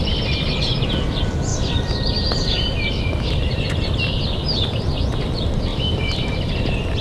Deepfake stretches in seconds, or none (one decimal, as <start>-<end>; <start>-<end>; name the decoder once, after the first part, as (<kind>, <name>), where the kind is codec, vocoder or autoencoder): 1.5-3.6 (vocoder, BigVGAN v2); 5.7-6.6